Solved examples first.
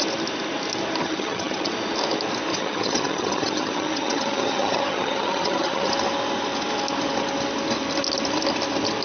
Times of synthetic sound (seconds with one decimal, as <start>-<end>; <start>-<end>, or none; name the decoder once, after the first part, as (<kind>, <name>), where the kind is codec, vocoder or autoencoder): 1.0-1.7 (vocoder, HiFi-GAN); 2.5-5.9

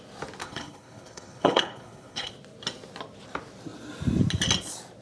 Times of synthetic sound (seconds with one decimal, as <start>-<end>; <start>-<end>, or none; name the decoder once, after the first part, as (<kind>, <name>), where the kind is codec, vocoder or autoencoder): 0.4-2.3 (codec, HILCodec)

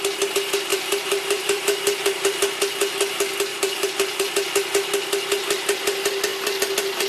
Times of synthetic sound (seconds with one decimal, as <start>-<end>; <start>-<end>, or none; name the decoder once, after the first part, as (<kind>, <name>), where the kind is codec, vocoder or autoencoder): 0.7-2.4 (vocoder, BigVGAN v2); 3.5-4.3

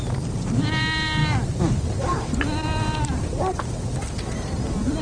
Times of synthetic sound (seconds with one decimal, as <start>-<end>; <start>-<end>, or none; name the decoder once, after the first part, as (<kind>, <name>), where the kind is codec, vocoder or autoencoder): none